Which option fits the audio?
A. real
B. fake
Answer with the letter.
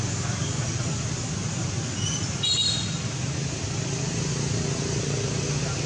A